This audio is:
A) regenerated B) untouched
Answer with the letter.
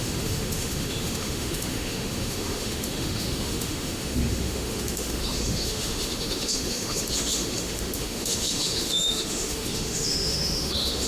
A